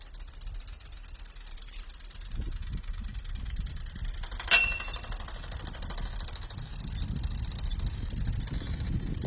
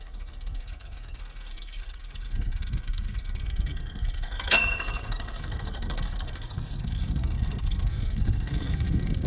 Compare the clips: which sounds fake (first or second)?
second